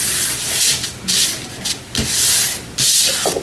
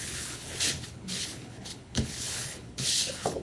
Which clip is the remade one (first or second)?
second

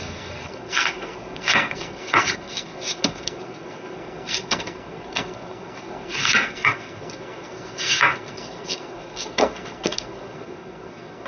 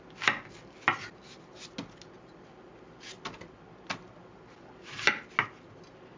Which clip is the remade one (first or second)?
first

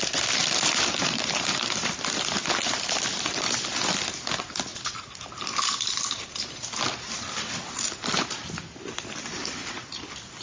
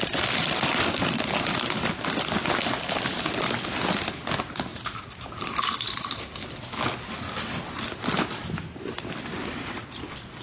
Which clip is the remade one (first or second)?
first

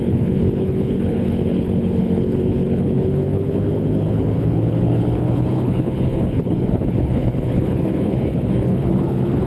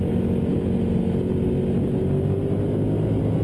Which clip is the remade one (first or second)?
first